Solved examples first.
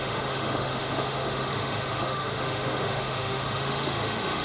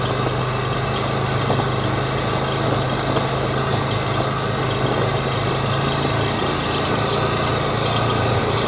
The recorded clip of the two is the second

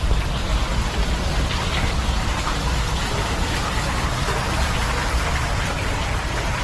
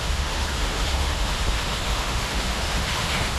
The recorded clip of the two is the first